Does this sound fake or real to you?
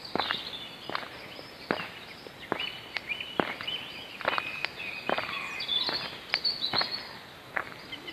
real